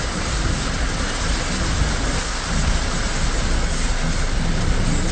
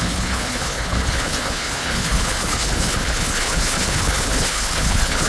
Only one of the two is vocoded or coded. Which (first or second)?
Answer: second